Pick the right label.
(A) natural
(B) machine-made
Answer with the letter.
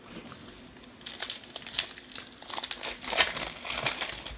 A